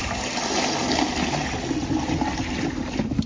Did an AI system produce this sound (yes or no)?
no